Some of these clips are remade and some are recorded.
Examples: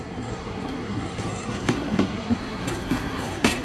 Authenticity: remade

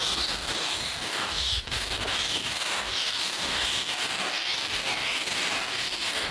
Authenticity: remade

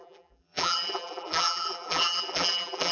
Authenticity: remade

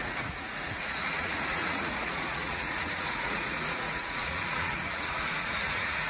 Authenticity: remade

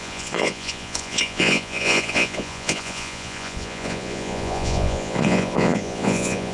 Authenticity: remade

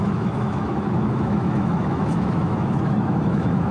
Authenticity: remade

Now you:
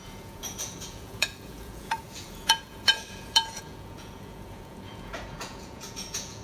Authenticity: remade